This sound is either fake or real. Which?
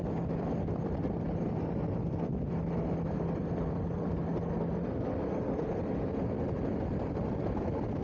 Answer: real